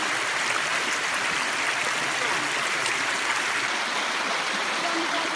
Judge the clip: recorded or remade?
recorded